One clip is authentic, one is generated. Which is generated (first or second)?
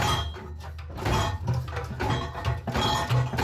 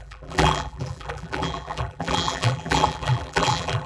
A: second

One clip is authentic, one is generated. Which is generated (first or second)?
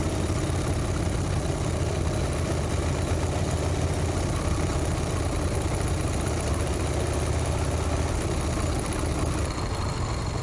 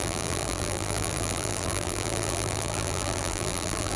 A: second